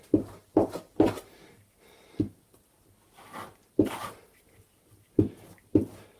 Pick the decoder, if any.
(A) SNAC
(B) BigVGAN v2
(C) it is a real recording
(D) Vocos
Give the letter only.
C